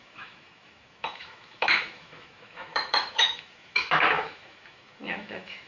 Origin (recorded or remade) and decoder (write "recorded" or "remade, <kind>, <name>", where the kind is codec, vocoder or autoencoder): remade, autoencoder, DAC-VAE